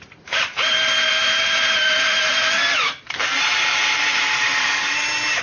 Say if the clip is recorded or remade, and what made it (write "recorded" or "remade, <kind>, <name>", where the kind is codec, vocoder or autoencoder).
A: remade, vocoder, BigVGAN v2